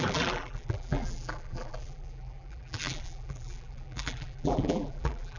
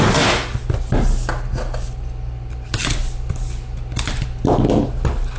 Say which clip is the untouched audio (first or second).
second